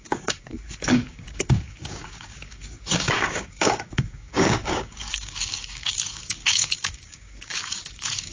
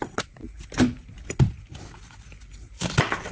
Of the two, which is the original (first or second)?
second